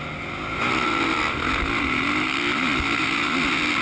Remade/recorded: recorded